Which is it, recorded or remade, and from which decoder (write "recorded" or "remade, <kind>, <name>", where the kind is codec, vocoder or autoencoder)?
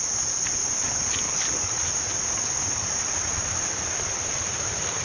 recorded